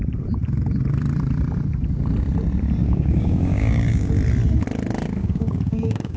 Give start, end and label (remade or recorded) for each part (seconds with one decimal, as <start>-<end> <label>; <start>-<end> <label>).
0.0-2.8 recorded; 2.8-4.1 remade; 4.1-5.2 recorded; 5.2-6.2 remade

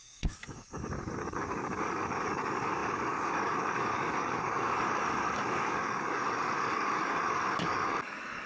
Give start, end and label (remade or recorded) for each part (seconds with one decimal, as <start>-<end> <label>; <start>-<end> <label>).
0.0-8.5 remade

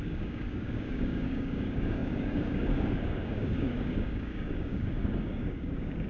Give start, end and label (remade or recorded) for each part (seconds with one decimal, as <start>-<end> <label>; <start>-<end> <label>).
0.0-6.1 remade

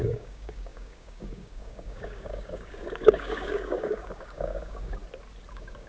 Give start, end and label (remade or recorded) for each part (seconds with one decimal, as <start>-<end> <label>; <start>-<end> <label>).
0.0-5.0 remade; 5.0-5.5 recorded; 5.5-5.9 remade

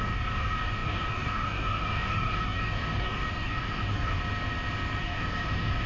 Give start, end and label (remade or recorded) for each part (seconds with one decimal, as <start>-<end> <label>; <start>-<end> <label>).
0.0-4.2 remade; 4.2-5.0 recorded; 5.0-5.9 remade

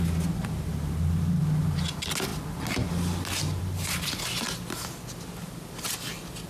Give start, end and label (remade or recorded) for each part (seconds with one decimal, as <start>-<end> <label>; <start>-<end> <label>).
0.0-6.5 recorded

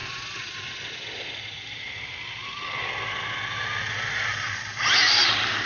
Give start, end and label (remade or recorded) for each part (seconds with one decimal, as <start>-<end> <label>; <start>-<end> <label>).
0.0-5.7 recorded

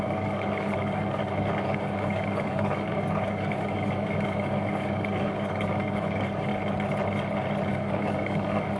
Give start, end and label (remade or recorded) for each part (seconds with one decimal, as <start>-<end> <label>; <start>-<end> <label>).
0.0-6.5 remade; 6.5-7.7 recorded; 7.7-8.8 remade